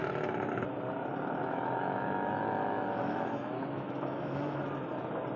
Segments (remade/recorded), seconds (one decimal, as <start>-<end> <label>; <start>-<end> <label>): 0.0-1.4 recorded; 1.4-4.6 remade; 4.6-5.4 recorded

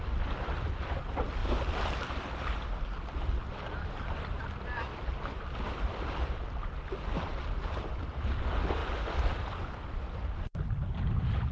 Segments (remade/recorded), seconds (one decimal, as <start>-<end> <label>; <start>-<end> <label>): 0.0-11.5 recorded